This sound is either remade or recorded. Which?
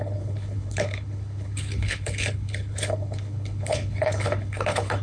remade